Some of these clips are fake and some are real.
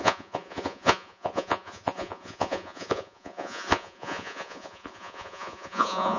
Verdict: fake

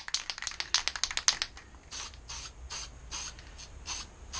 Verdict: real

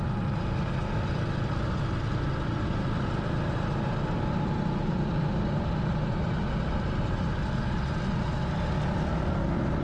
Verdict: real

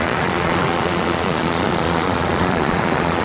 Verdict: fake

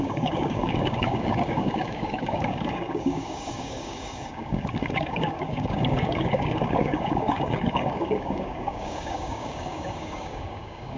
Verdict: fake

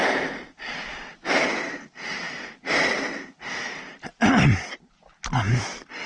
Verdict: real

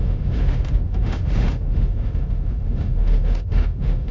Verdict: fake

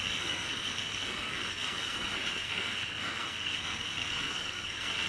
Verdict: fake